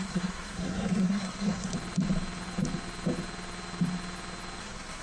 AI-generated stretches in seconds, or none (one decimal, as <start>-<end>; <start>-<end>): 0.0-1.7; 4.6-5.0